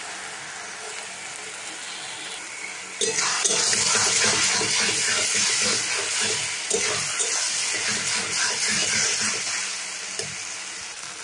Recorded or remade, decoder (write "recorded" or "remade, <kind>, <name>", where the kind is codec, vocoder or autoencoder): recorded